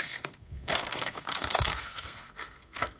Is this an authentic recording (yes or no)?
no